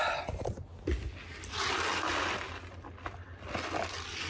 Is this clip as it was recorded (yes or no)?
yes